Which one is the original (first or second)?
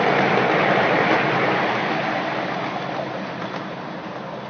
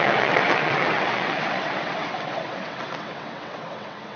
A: first